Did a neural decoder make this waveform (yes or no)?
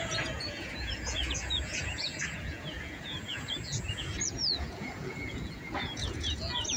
yes